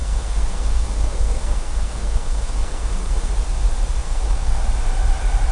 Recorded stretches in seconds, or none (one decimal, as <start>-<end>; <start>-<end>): 3.3-4.0; 4.6-5.5

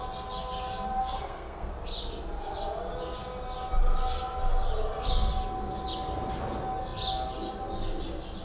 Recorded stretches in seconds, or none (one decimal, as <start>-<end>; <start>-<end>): 0.0-1.0; 1.7-8.4

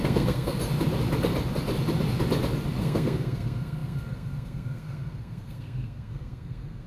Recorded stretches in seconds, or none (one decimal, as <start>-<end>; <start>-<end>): 0.6-2.8

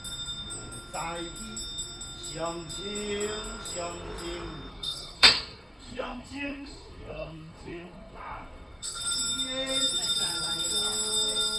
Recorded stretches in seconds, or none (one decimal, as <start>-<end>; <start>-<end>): 0.0-4.7; 9.0-11.6

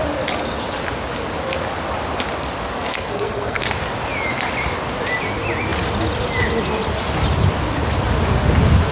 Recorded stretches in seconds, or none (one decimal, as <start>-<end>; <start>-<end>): 0.0-2.9; 3.6-8.9